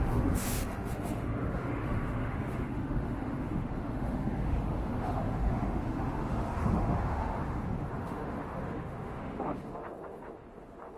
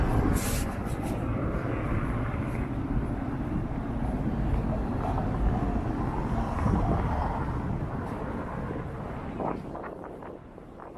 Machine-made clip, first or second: first